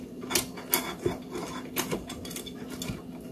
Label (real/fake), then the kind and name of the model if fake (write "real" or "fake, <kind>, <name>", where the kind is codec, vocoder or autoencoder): real